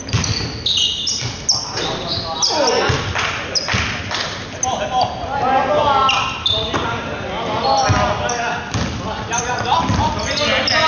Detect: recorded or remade recorded